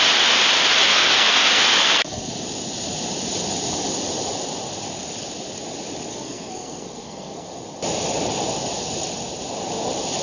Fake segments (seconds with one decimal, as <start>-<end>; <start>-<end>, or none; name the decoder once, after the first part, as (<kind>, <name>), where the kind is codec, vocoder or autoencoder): 0.9-2.3 (codec, SNAC); 6.1-7.6